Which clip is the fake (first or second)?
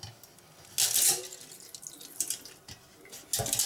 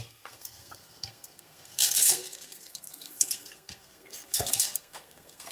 second